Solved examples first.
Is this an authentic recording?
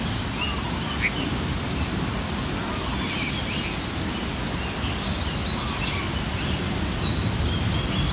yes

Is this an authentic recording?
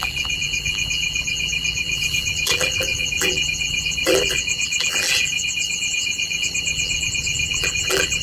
no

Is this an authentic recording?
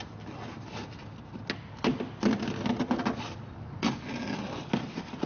yes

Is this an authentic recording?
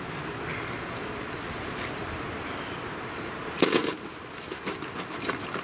yes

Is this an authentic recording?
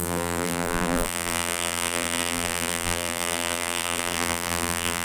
no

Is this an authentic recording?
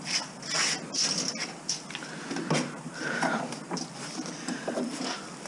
yes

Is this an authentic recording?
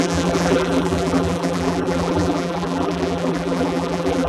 no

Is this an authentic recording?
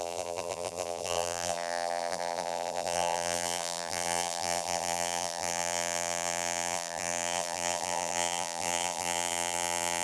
no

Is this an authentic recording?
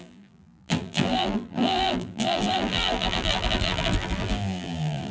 no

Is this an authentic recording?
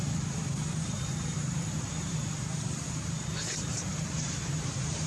no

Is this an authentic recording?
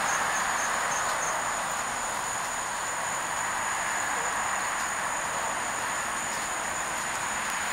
yes